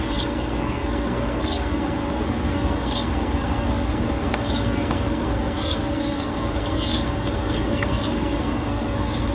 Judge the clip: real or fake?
fake